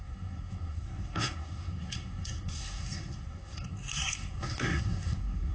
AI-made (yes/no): yes